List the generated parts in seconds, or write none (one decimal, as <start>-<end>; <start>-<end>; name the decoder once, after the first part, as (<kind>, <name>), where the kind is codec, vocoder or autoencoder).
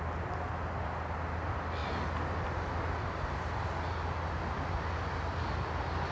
none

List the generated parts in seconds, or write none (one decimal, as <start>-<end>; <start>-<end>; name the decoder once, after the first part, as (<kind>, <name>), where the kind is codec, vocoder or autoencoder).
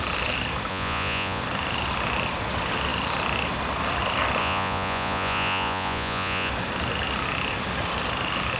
0.7-1.4 (vocoder, Vocos); 4.4-6.5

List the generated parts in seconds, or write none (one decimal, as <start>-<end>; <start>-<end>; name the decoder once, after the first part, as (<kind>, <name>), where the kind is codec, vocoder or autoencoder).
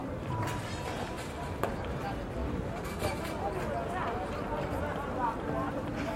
0.0-2.4 (vocoder, BigVGAN v2); 5.7-6.2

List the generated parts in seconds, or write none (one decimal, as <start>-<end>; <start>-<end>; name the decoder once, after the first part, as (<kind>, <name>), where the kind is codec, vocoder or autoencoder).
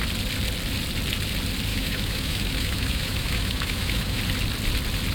1.7-4.2 (autoencoder, DAC-VAE)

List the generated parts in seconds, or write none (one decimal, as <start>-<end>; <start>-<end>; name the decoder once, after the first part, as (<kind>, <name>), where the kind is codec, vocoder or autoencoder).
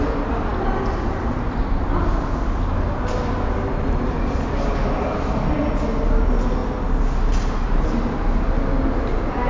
none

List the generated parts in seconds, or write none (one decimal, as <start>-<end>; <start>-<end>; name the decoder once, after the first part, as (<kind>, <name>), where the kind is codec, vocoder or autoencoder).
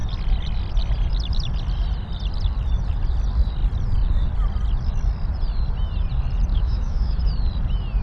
6.5-7.2 (autoencoder, DAC-VAE)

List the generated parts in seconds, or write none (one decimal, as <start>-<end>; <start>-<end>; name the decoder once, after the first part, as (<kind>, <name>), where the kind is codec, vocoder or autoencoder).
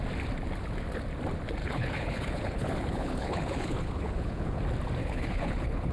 1.6-4.6 (codec, HILCodec); 5.0-5.9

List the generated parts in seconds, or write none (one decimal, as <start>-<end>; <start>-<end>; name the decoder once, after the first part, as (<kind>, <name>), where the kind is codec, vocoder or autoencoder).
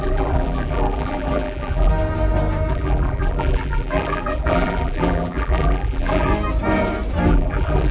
0.0-1.9 (vocoder, BigVGAN v2); 2.7-6.3; 7.3-7.9